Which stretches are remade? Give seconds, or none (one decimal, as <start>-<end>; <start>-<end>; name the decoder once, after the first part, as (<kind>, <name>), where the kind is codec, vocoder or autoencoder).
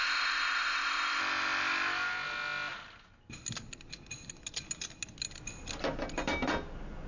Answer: 0.0-1.2 (codec, ZipCodec)